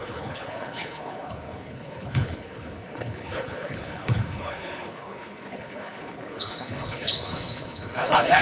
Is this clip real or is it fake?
fake